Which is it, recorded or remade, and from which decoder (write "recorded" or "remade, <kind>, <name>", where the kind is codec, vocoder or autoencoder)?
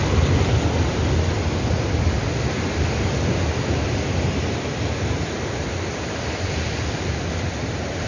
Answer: recorded